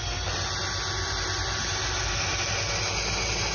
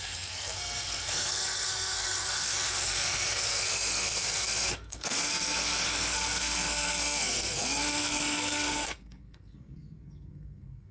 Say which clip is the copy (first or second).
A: second